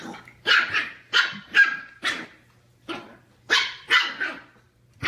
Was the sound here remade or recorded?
recorded